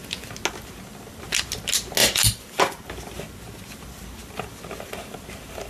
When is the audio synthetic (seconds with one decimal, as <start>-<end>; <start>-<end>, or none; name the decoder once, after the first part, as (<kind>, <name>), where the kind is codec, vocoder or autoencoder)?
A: 2.0-2.9 (vocoder, BigVGAN v2)